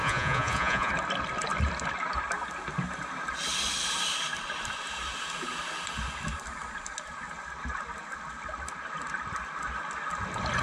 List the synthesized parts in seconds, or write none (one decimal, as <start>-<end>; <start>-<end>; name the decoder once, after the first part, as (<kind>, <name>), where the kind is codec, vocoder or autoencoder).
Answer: 0.0-0.9 (vocoder, Vocos)